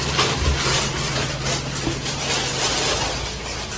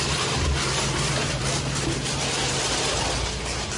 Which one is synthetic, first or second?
second